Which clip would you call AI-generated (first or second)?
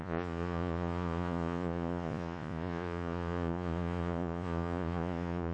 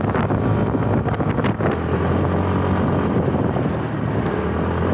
first